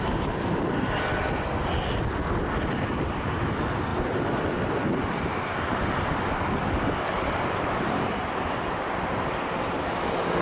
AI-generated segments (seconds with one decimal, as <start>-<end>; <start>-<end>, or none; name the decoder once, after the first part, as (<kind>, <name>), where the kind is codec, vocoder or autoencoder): 3.9-9.2 (vocoder, BigVGAN v2)